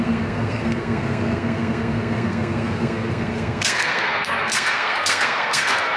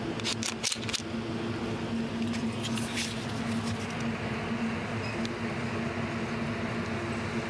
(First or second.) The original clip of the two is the second